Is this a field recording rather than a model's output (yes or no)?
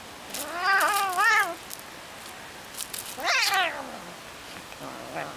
yes